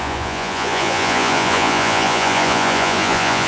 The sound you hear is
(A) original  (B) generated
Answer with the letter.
B